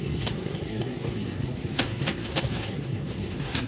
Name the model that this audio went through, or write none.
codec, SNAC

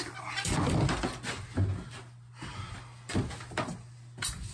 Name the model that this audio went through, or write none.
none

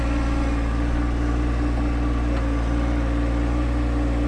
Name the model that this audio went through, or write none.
none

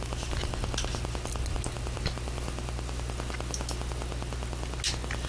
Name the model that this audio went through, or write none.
none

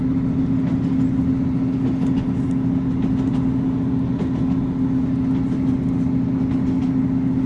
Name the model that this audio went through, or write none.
none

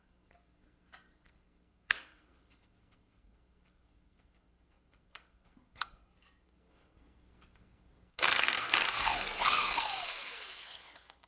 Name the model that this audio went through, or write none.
codec, SNAC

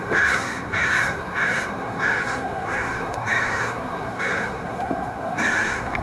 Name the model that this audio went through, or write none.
codec, SNAC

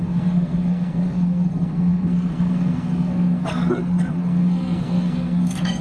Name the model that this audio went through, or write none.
codec, SNAC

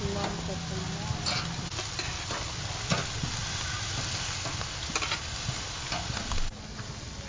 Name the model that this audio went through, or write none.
none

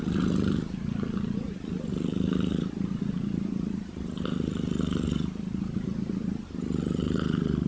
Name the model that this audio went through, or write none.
none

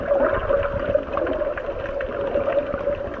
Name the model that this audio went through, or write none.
none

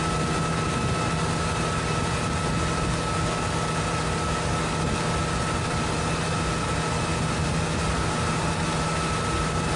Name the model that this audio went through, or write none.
none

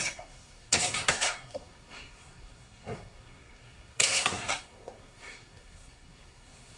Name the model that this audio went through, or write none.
codec, SNAC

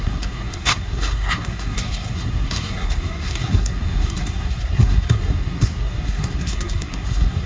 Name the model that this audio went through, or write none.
codec, SNAC